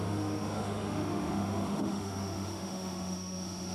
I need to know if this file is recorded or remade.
remade